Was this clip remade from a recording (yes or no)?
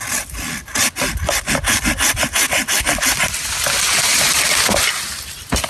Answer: no